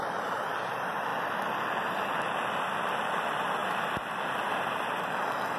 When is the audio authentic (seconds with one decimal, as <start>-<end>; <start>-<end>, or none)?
0.0-5.6